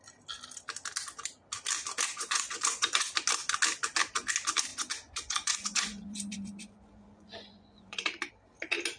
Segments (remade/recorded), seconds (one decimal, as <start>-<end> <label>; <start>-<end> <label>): 0.0-2.1 recorded; 2.1-3.1 remade; 3.1-4.7 recorded; 4.7-8.3 remade; 8.3-9.0 recorded